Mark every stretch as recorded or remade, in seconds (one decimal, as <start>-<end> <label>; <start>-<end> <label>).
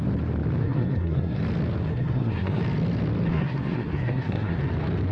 0.0-0.6 recorded; 0.6-1.4 remade; 1.4-1.9 recorded; 1.9-2.6 remade; 2.6-3.3 recorded; 3.3-4.6 remade; 4.6-5.1 recorded